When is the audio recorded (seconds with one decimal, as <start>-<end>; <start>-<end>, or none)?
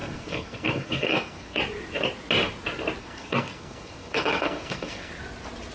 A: 1.6-3.0; 5.1-5.7